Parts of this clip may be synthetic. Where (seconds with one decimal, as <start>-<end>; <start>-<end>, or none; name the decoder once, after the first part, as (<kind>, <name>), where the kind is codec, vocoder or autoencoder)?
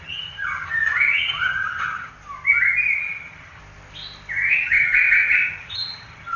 0.0-2.1 (vocoder, HiFi-GAN); 3.0-3.6; 4.5-6.4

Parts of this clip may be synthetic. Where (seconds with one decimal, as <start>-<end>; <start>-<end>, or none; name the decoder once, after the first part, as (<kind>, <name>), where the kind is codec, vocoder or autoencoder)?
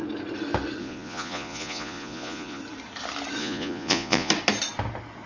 0.8-2.6 (vocoder, Vocos); 3.4-4.3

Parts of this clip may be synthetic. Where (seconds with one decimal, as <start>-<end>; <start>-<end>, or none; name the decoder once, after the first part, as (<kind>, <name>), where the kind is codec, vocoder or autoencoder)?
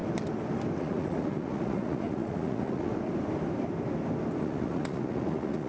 0.8-2.9 (vocoder, Vocos); 4.4-5.7